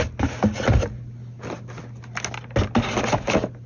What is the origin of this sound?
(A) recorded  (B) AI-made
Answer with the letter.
A